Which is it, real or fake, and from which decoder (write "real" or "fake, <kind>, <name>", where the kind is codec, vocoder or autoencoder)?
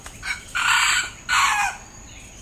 real